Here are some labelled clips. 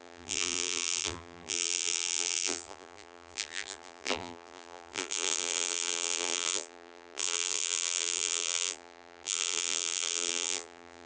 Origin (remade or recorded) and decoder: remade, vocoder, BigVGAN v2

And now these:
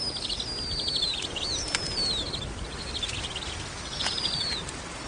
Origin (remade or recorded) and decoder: recorded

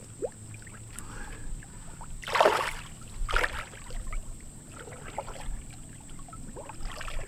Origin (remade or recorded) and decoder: recorded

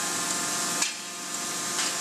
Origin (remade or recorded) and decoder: recorded